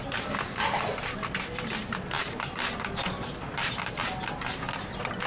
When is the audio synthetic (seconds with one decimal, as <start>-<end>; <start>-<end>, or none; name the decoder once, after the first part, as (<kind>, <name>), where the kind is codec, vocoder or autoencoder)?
none